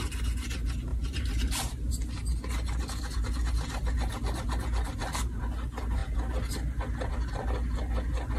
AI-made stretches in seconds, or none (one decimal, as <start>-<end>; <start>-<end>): 0.9-1.9

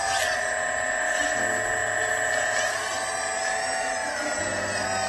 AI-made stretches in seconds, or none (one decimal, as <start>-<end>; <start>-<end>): none

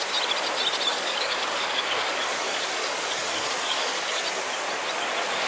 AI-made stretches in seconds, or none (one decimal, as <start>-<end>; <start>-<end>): 0.9-4.2

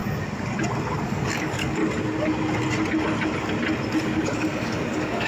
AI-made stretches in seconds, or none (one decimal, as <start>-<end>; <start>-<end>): 1.0-1.8; 4.0-5.3